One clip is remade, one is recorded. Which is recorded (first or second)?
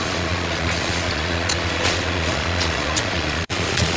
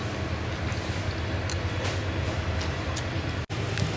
second